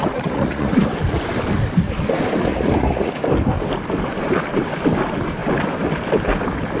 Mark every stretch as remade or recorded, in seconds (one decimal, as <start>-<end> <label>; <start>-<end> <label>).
0.0-0.9 remade; 0.9-2.5 recorded; 2.5-3.1 remade; 3.1-6.8 recorded